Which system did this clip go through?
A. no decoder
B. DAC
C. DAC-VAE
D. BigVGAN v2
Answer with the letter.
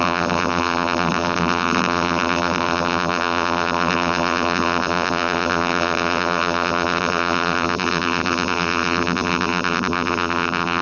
D